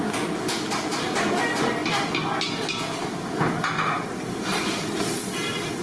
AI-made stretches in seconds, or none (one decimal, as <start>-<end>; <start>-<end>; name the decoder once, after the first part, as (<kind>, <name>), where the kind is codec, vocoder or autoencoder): none